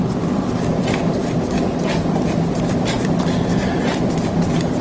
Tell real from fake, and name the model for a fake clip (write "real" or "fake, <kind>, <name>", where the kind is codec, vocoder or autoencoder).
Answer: real